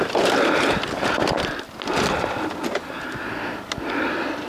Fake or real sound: real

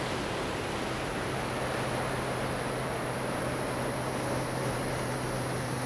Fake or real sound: fake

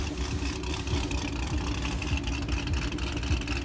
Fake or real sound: real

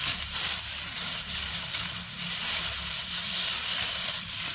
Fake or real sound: fake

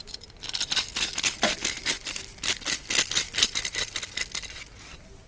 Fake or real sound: real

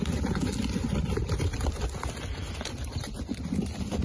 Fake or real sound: real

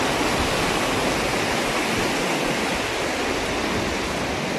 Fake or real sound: real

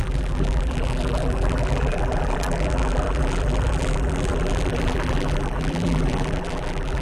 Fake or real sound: fake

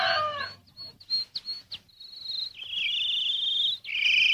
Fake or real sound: real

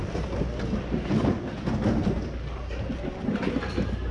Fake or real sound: real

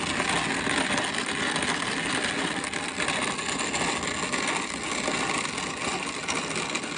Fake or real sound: real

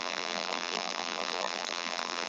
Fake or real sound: fake